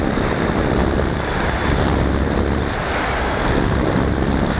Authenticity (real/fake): real